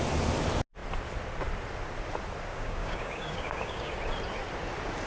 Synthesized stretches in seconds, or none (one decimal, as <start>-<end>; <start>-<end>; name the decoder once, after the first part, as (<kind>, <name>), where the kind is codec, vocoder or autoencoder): 2.5-3.9 (codec, DAC)

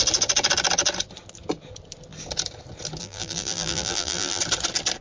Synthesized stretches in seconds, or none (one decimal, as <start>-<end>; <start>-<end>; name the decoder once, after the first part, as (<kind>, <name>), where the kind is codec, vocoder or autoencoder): 3.0-4.4 (vocoder, BigVGAN v2)

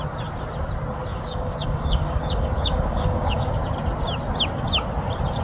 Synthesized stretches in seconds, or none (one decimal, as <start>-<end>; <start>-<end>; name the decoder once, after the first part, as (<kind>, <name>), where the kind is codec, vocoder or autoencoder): 1.1-3.5 (codec, DAC)

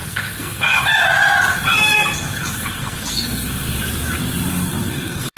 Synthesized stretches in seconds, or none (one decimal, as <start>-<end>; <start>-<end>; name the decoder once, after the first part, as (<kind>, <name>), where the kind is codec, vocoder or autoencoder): 0.0-0.8 (codec, SNAC); 1.5-3.8; 4.5-5.4

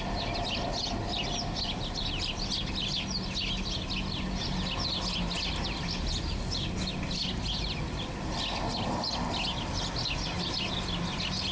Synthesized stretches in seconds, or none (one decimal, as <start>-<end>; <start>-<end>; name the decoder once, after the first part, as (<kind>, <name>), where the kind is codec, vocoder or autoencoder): none

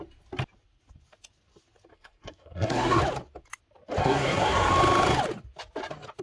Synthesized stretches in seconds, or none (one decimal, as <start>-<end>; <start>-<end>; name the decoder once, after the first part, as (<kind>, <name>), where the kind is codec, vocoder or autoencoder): 1.9-3.0 (codec, SNAC); 4.0-4.7

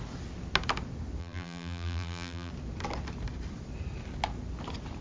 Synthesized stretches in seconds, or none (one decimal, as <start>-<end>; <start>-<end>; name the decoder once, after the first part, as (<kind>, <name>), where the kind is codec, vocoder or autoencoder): 1.2-2.5 (vocoder, BigVGAN v2)

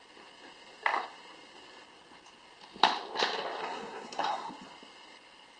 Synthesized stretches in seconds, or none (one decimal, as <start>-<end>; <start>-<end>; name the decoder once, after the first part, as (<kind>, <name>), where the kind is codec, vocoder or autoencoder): 3.6-4.5 (codec, SNAC)